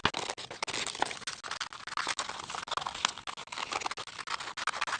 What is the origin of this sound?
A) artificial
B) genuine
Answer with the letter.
B